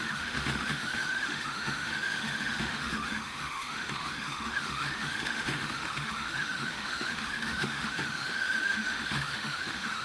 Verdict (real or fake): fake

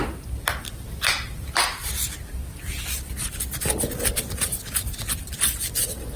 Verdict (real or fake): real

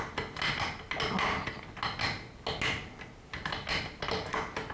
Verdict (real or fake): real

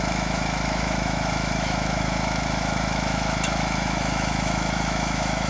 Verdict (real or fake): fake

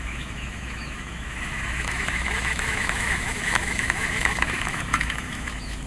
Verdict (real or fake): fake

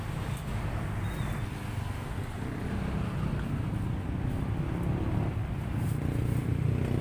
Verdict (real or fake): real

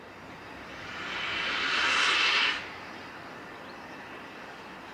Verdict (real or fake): real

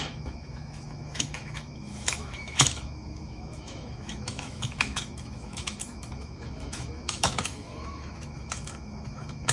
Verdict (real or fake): fake